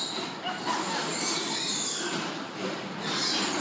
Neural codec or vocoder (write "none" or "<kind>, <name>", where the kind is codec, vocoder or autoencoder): none